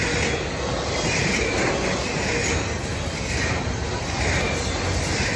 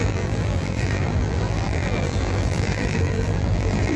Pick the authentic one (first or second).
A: first